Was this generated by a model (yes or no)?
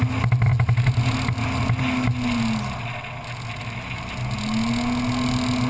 no